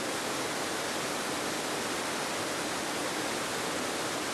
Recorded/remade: recorded